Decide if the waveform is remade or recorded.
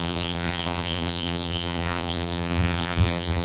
remade